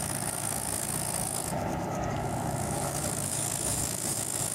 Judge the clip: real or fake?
fake